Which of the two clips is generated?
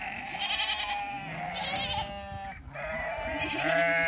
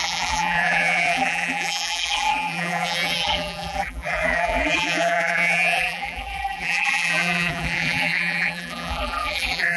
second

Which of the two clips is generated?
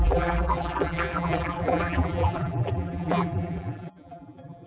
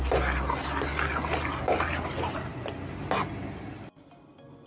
first